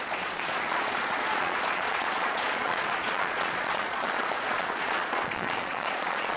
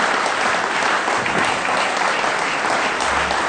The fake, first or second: first